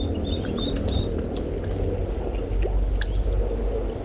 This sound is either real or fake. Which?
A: real